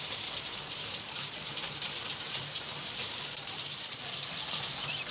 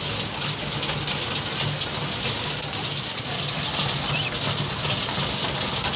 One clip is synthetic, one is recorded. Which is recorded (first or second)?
second